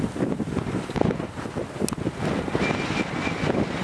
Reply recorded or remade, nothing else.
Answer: recorded